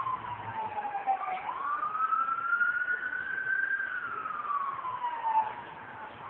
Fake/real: real